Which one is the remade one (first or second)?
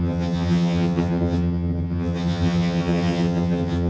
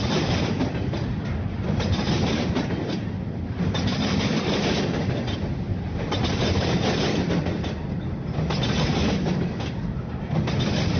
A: first